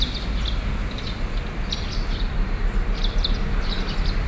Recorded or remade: remade